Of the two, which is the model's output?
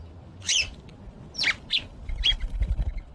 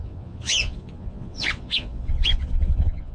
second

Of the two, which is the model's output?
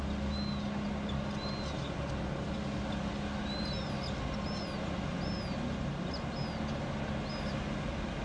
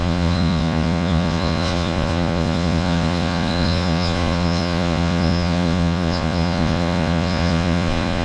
second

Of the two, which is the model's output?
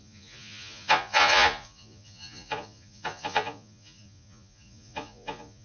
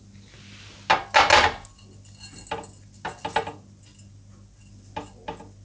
first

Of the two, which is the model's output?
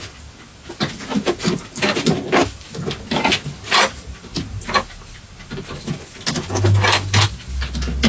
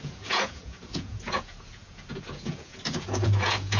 second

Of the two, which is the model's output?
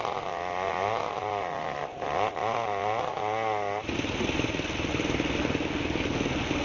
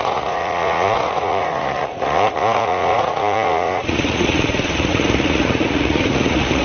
second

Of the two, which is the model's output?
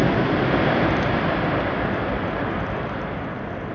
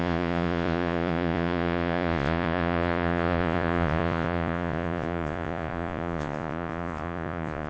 second